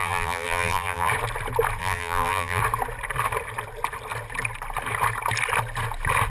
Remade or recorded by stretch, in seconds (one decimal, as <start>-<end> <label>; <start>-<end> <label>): 0.0-1.1 remade; 1.1-1.8 recorded; 1.8-2.6 remade; 2.6-6.3 recorded